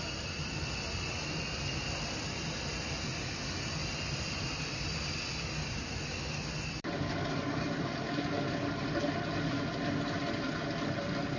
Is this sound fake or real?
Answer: real